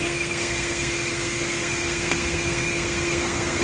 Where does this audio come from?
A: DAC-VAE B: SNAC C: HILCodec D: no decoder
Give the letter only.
B